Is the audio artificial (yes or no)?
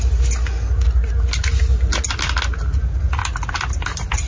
no